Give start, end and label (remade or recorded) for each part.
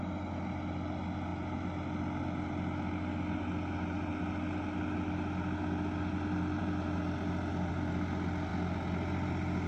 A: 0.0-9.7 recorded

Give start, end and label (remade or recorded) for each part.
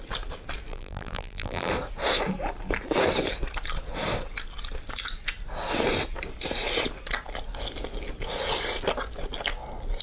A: 0.0-0.7 recorded; 0.7-1.7 remade; 1.7-10.0 recorded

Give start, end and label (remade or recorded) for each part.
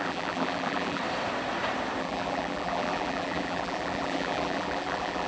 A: 0.0-1.0 remade; 1.0-2.0 recorded; 2.0-5.3 remade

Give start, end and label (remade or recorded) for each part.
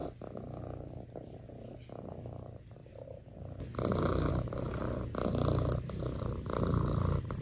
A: 0.0-2.8 recorded; 2.8-7.4 remade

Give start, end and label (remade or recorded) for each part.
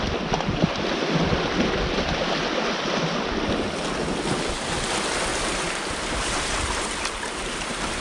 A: 0.0-5.3 recorded; 5.3-8.0 remade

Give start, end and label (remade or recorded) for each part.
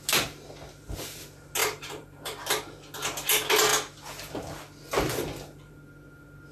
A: 0.0-1.6 recorded; 1.6-2.5 remade; 2.5-6.5 recorded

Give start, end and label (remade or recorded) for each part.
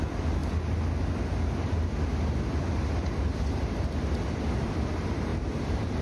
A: 0.0-5.3 recorded; 5.3-6.0 remade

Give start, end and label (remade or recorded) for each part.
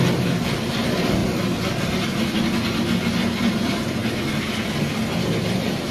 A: 0.0-5.9 recorded